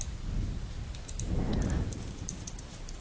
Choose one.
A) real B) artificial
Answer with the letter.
B